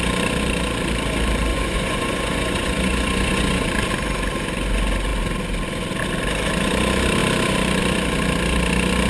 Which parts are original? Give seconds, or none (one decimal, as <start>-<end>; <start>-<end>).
0.0-1.5; 3.7-9.1